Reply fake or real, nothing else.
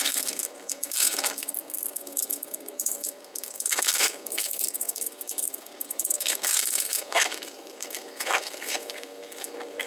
fake